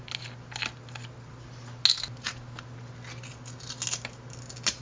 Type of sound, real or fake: real